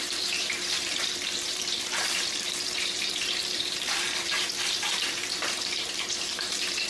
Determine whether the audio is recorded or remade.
remade